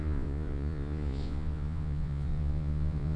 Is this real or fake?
fake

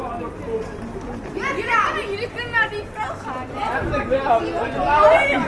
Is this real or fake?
real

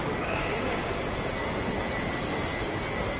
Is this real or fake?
real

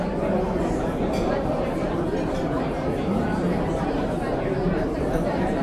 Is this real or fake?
fake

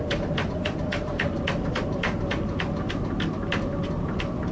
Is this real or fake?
real